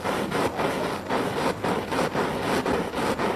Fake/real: real